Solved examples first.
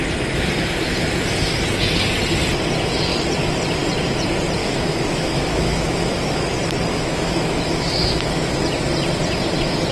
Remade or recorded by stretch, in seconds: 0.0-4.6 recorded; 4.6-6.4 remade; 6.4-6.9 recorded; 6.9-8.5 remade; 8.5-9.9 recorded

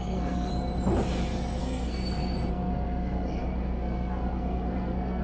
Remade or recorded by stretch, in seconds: 0.0-0.5 remade; 0.5-1.6 recorded; 1.6-2.0 remade; 2.0-2.5 recorded; 2.5-5.2 remade

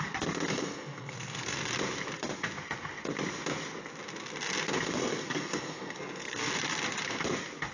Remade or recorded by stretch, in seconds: 0.0-0.5 recorded; 0.5-1.6 remade; 1.6-5.0 recorded; 5.0-6.5 remade; 6.5-7.7 recorded

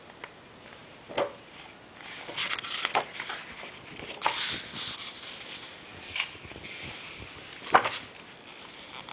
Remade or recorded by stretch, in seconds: 0.0-5.9 recorded; 5.9-6.9 remade; 6.9-9.1 recorded

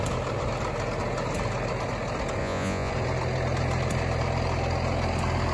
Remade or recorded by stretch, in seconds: 0.0-2.4 recorded; 2.4-2.9 remade; 2.9-5.5 recorded

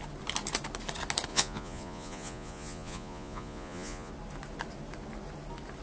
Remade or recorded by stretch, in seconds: 0.0-1.3 recorded; 1.3-4.1 remade; 4.1-5.8 recorded

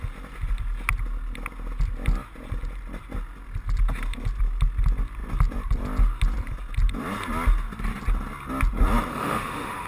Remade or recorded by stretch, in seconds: 0.0-9.1 recorded; 9.1-9.9 remade